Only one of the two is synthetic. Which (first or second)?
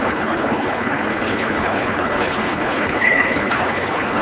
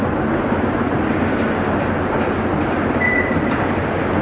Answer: first